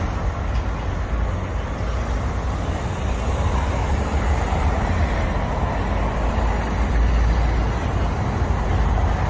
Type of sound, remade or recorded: recorded